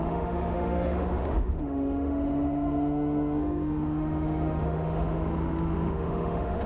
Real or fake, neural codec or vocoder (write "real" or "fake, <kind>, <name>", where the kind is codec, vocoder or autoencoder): fake, autoencoder, DAC-VAE